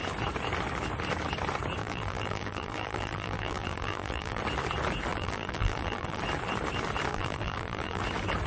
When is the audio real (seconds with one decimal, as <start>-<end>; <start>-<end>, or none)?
0.0-1.8; 4.4-5.1; 6.2-7.1; 8.0-8.5